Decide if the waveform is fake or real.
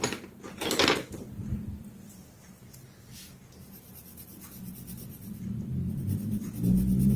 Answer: real